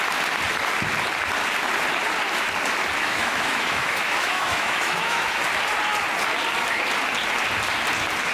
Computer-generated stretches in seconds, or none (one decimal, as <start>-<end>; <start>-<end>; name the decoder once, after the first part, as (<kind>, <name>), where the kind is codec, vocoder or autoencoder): 3.0-5.4 (autoencoder, DAC-VAE)